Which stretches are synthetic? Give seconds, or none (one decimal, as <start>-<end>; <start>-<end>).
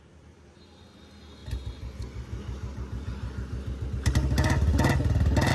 none